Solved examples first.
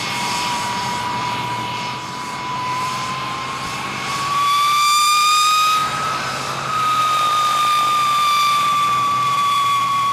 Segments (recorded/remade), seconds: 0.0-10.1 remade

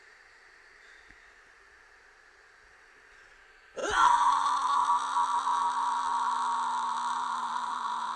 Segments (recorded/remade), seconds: 0.0-3.8 recorded; 3.8-4.9 remade; 4.9-5.5 recorded; 5.5-6.1 remade; 6.1-7.4 recorded; 7.4-8.2 remade

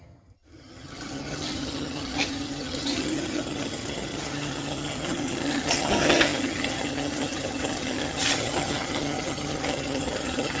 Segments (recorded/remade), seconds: 0.0-10.6 remade

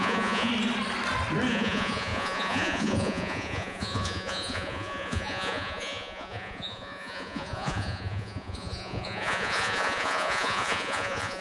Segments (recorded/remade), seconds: 0.0-0.5 remade; 0.5-1.5 recorded; 1.5-11.4 remade